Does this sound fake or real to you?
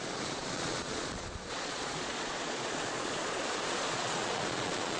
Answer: fake